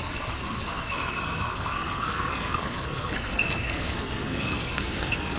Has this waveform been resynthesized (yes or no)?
yes